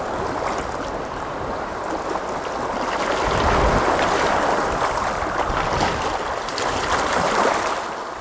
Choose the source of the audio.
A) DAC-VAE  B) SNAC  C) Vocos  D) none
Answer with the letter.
D